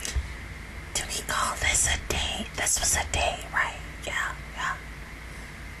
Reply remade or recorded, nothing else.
recorded